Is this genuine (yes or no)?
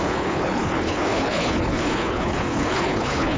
no